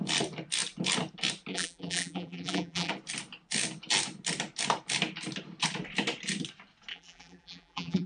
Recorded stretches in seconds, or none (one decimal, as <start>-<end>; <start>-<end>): 0.0-1.5; 2.9-6.9